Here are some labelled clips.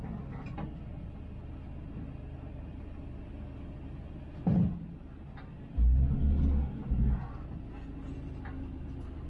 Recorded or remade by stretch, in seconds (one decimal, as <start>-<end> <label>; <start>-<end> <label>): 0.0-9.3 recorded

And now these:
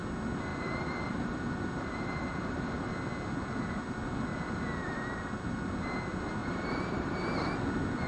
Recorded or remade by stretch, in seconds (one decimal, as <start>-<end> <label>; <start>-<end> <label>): 0.0-0.5 recorded; 0.5-2.9 remade; 2.9-6.4 recorded; 6.4-7.2 remade; 7.2-8.1 recorded

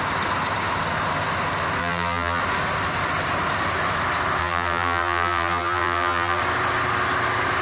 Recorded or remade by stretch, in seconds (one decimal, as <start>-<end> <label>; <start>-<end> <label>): 0.0-1.8 recorded; 1.8-2.4 remade; 2.4-4.4 recorded; 4.4-6.4 remade; 6.4-7.6 recorded